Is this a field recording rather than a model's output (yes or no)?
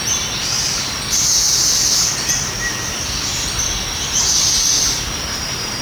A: no